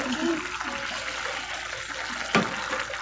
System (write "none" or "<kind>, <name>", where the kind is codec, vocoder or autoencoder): none